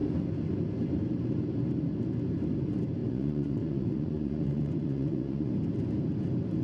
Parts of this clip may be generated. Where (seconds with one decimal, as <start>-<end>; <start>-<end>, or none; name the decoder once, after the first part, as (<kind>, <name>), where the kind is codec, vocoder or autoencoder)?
3.0-5.5 (vocoder, Vocos)

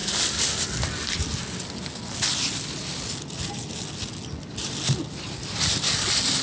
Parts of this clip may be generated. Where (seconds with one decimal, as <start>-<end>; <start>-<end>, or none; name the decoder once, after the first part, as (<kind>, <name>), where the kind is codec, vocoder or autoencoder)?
none

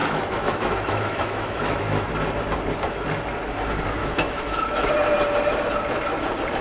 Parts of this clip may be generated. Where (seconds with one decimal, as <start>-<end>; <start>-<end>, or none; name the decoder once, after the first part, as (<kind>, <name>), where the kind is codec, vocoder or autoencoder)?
0.0-2.1 (autoencoder, DAC-VAE); 4.0-4.9